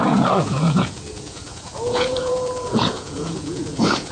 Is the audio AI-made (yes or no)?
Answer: yes